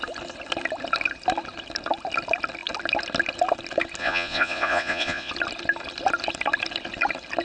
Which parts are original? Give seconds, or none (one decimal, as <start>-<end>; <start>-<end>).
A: 0.0-4.0; 5.3-7.4